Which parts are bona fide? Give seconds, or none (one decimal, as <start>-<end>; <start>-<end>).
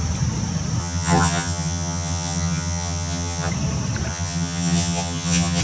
0.0-0.8; 3.5-4.1